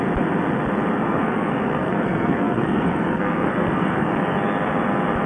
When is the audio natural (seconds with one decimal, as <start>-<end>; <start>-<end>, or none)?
0.0-0.9; 4.1-5.3